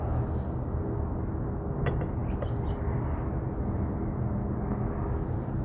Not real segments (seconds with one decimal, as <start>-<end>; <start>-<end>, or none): none